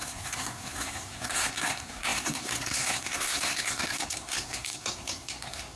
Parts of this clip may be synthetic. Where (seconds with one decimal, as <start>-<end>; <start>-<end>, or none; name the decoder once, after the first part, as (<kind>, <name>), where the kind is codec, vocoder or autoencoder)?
0.0-5.8 (codec, SNAC)